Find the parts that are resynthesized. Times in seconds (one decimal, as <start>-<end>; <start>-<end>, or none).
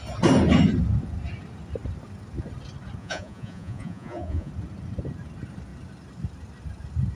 3.0-4.5